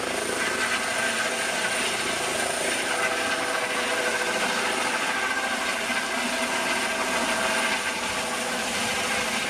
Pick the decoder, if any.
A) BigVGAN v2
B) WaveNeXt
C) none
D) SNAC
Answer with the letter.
C